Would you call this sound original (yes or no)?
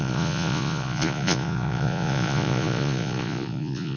no